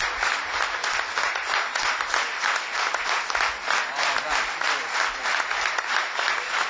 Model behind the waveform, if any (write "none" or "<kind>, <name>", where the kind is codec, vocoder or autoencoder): none